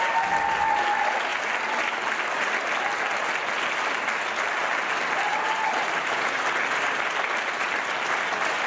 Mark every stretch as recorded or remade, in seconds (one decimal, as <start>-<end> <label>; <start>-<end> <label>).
0.0-8.7 recorded